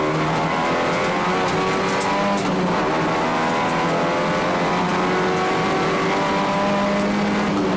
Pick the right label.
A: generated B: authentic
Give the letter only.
B